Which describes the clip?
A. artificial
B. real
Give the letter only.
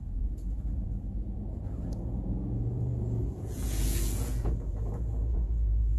A